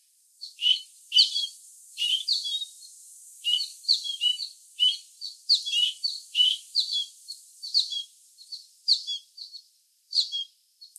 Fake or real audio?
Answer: fake